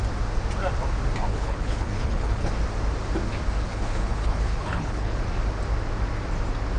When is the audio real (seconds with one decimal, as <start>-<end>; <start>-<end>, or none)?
0.0-1.3; 2.5-3.7; 5.2-6.8